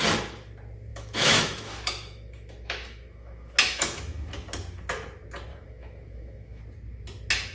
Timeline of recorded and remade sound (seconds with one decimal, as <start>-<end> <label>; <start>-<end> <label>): 0.0-0.9 recorded; 0.9-4.3 remade; 4.3-5.5 recorded; 5.5-6.6 remade; 6.6-7.5 recorded